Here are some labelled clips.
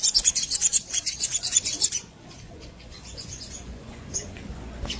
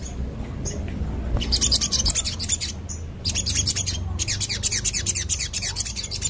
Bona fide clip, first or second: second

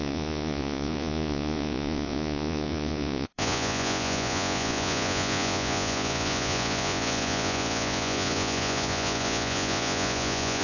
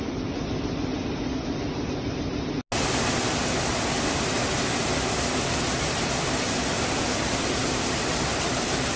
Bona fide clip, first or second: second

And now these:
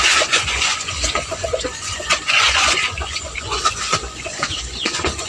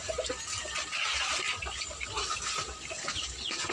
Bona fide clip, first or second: second